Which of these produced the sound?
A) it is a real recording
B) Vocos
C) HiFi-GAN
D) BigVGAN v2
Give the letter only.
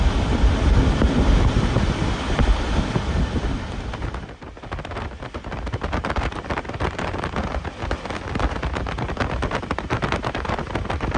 D